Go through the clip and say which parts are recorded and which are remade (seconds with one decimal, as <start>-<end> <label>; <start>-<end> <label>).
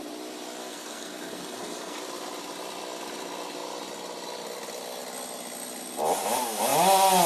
0.0-0.6 recorded; 0.6-2.0 remade; 2.0-7.3 recorded